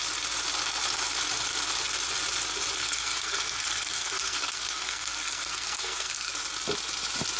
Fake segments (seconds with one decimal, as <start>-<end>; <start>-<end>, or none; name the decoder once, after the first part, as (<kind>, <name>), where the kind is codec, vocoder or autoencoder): 2.8-6.3 (codec, SNAC)